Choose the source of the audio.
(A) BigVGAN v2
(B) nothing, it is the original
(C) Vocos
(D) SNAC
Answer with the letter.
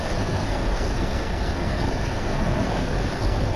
D